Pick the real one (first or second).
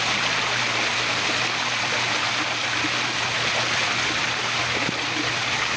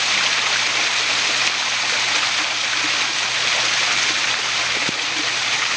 second